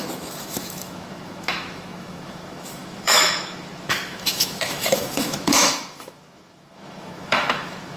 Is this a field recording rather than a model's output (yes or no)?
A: no